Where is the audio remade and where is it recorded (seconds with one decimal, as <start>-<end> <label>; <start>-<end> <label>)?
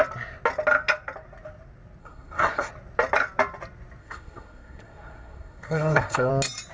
0.0-2.0 recorded; 2.0-2.7 remade; 2.7-4.0 recorded; 4.0-6.3 remade; 6.3-6.7 recorded